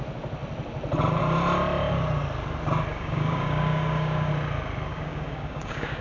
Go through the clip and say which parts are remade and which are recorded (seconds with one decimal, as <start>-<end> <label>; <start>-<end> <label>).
0.0-2.9 recorded; 2.9-4.3 remade; 4.3-4.9 recorded; 4.9-6.0 remade